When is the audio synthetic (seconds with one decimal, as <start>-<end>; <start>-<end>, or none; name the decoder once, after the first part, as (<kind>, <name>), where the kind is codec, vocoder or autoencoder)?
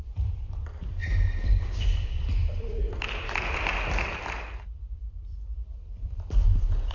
0.0-1.0 (vocoder, BigVGAN v2); 1.5-6.9